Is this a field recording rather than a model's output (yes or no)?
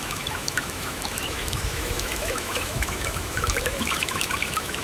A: no